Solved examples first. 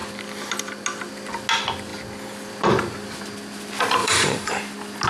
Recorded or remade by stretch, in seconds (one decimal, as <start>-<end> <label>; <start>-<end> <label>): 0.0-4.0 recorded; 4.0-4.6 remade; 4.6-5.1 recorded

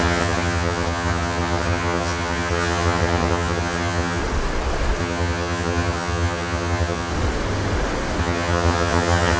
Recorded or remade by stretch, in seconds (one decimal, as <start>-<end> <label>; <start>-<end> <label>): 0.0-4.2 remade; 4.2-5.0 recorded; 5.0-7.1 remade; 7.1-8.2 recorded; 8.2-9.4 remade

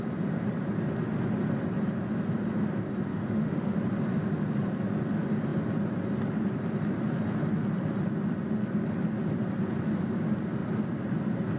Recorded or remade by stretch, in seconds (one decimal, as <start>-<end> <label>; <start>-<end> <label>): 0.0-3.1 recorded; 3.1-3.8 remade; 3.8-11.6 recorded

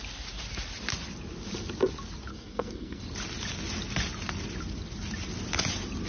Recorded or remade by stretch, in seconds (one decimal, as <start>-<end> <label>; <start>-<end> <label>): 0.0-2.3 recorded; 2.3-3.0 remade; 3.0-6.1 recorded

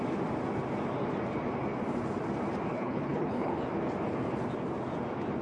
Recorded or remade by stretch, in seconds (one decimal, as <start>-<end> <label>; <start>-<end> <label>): 0.0-2.7 recorded; 2.7-3.6 remade; 3.6-5.4 recorded